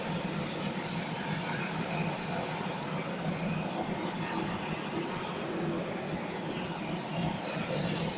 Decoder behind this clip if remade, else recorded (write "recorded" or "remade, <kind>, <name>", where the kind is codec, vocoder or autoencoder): recorded